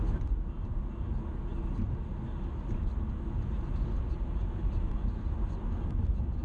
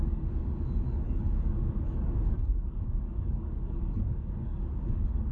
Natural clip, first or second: first